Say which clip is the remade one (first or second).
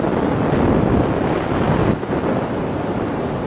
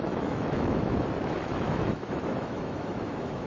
second